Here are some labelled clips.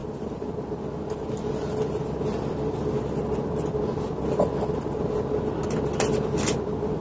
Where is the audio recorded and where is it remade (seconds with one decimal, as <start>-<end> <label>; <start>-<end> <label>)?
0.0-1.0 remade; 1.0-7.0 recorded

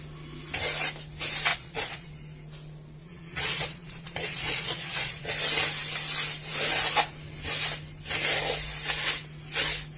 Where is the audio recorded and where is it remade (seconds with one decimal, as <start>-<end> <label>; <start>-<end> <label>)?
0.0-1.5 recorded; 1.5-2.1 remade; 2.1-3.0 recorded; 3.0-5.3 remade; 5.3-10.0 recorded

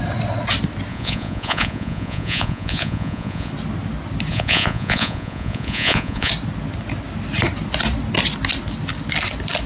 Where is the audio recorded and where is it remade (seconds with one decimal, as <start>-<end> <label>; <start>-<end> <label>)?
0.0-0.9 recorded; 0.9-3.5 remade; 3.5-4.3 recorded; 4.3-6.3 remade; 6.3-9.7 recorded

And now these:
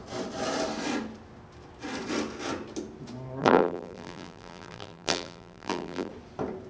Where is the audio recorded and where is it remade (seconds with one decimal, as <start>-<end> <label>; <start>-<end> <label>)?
0.0-3.4 recorded; 3.4-6.1 remade; 6.1-6.7 recorded

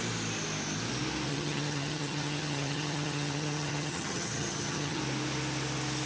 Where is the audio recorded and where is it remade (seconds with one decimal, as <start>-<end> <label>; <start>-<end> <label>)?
0.0-1.3 recorded; 1.3-5.0 remade; 5.0-6.1 recorded

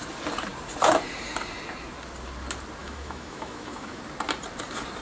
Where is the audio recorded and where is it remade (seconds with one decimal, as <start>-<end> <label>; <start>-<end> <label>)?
0.0-2.8 recorded; 2.8-4.0 remade; 4.0-5.0 recorded

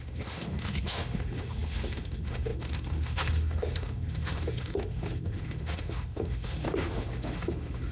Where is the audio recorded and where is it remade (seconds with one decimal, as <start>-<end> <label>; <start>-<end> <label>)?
0.0-7.9 remade